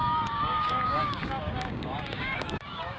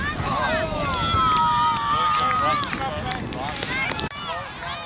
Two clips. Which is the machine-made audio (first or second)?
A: first